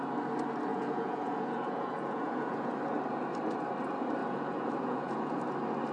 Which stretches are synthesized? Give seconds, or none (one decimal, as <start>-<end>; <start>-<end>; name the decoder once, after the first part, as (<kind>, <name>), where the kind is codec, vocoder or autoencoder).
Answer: 0.7-2.7 (vocoder, Vocos); 4.2-5.4